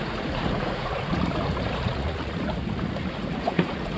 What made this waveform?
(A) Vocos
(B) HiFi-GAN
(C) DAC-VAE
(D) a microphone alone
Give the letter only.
A